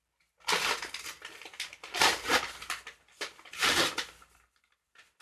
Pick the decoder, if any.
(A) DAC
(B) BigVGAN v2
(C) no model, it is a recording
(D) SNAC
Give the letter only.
C